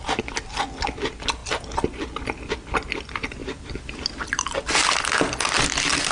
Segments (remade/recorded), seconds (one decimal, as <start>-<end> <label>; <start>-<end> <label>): 0.0-3.4 recorded; 3.4-5.0 remade; 5.0-6.1 recorded